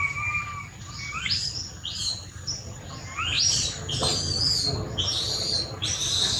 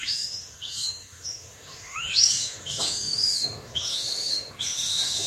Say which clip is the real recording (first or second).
first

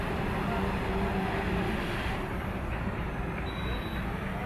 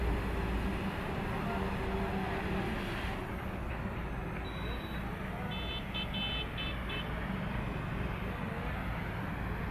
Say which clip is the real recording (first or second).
second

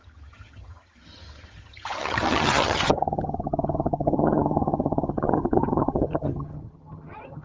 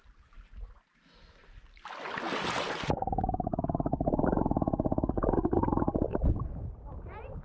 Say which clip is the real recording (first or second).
second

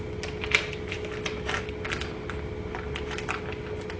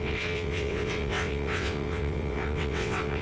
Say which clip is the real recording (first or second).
first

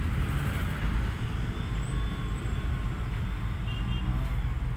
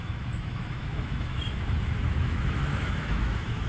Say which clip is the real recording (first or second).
first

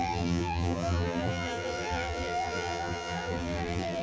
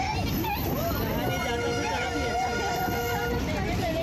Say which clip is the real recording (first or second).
second